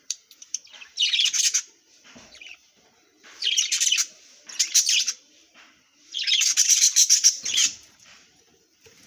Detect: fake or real fake